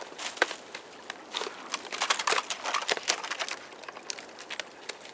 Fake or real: real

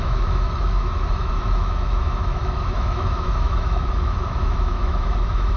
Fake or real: fake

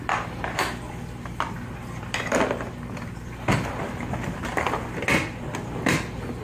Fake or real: real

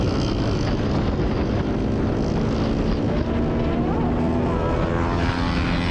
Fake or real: real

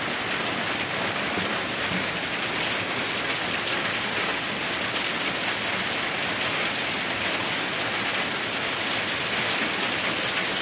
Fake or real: real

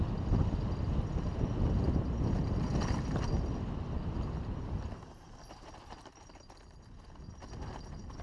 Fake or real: real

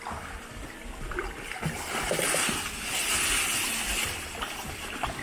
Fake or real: real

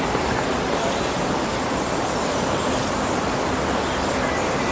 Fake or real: real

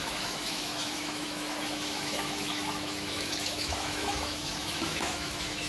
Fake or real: fake